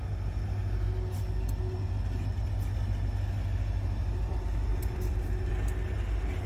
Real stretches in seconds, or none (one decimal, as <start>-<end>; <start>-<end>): 0.0-4.7; 5.5-6.5